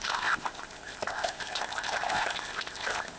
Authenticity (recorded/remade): remade